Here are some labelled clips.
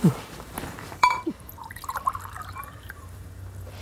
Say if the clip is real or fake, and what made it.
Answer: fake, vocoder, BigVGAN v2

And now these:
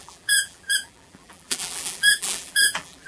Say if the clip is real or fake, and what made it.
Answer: fake, vocoder, BigVGAN v2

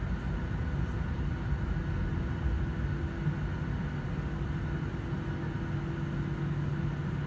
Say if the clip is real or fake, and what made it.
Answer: real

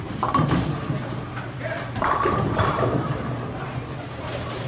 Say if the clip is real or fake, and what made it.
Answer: fake, vocoder, BigVGAN v2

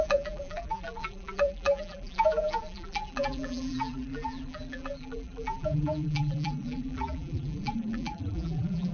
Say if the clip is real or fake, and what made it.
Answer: fake, vocoder, BigVGAN v2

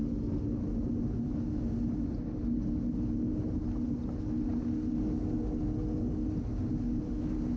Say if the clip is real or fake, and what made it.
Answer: real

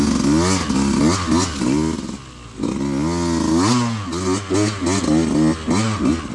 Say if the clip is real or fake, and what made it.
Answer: real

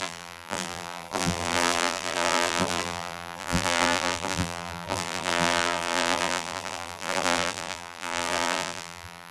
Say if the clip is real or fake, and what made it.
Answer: fake, vocoder, BigVGAN v2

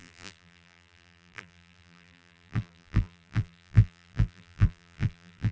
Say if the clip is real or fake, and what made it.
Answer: fake, vocoder, BigVGAN v2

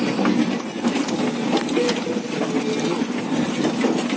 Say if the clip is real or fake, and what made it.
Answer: real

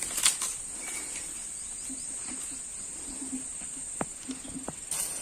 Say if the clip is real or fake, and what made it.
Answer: real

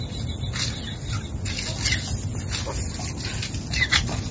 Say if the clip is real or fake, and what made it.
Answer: real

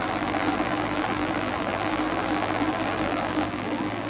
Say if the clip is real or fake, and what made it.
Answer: fake, vocoder, BigVGAN v2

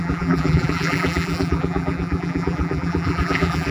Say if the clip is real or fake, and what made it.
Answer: fake, vocoder, BigVGAN v2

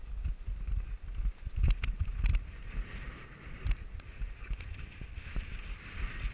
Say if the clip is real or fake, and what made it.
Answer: real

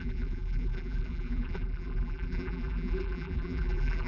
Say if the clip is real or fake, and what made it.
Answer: fake, vocoder, BigVGAN v2